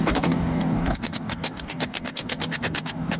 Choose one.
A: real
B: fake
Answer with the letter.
B